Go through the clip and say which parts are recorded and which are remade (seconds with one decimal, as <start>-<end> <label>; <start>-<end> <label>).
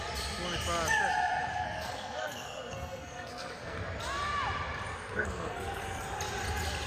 0.0-1.5 recorded; 1.5-3.8 remade; 3.8-4.9 recorded; 4.9-6.0 remade; 6.0-6.9 recorded